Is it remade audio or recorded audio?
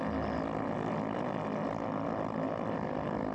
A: recorded